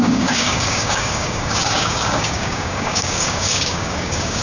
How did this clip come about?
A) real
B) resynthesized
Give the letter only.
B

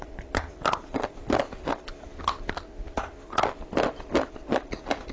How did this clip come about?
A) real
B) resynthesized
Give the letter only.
A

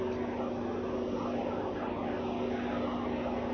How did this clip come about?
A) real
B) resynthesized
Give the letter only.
A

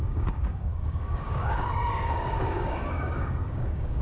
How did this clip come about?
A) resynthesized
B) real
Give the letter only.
A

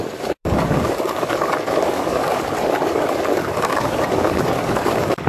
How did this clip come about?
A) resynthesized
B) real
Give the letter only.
A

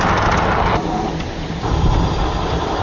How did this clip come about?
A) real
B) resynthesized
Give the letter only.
A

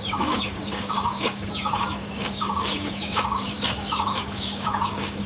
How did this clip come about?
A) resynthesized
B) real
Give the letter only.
A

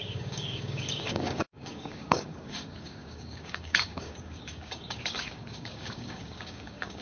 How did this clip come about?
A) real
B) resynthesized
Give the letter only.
B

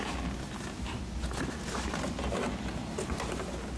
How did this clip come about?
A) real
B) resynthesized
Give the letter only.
A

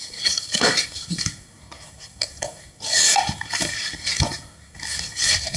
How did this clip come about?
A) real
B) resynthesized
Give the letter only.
B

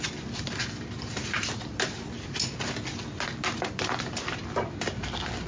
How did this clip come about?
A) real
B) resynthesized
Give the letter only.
A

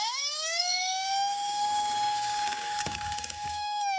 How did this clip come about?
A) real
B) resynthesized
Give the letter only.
B